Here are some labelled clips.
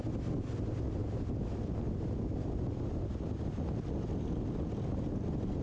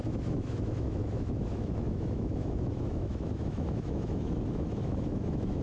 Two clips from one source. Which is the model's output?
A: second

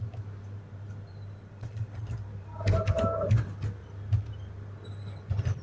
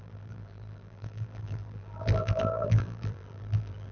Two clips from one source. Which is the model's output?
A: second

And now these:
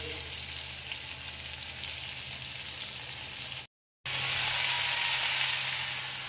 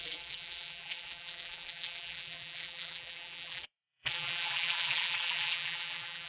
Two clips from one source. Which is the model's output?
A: second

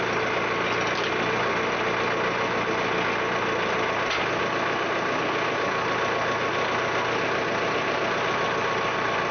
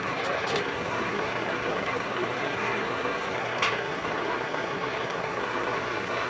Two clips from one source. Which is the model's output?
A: second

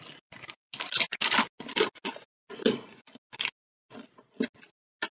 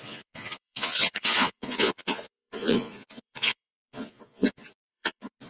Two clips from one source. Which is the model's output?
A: second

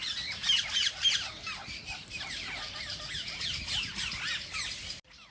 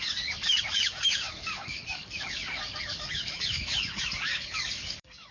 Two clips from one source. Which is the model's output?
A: second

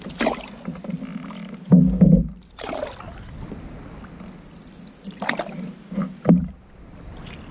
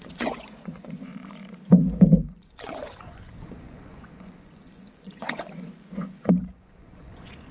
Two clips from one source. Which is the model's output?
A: second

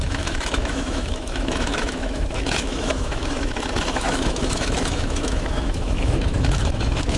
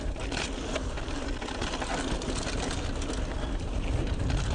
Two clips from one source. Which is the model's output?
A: first